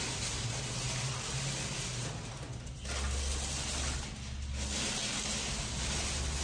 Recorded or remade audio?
recorded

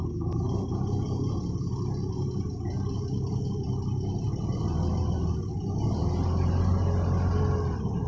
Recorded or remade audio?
recorded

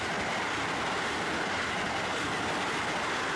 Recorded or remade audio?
recorded